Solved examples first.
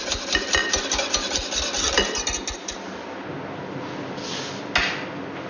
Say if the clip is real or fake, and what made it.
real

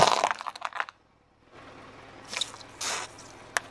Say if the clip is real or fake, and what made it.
real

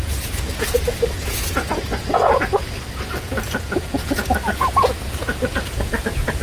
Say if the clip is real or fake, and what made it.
fake, vocoder, Vocos